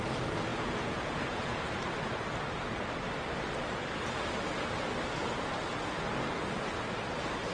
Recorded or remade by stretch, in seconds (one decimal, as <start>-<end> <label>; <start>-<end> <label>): 0.0-0.5 recorded; 0.5-1.6 remade; 1.6-5.7 recorded; 5.7-6.4 remade; 6.4-7.5 recorded